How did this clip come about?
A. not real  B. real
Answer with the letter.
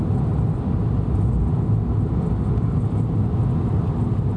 B